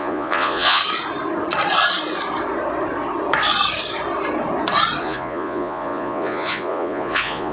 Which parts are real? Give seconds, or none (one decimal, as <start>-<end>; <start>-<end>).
0.8-5.0